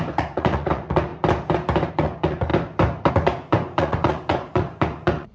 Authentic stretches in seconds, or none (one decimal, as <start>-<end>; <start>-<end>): 1.1-1.9; 2.5-3.1